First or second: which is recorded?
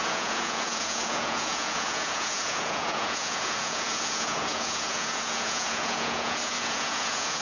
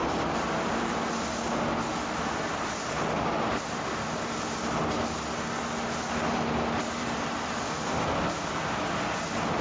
second